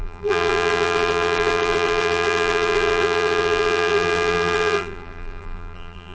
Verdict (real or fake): fake